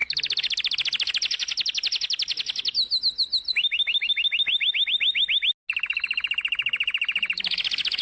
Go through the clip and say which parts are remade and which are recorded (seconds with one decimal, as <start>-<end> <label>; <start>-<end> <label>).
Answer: 0.0-8.0 recorded